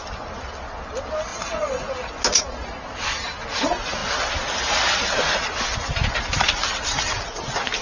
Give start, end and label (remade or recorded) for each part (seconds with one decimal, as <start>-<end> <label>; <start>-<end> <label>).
0.0-1.3 recorded; 1.3-1.9 remade; 1.9-2.3 recorded; 2.3-2.8 remade; 2.8-7.8 recorded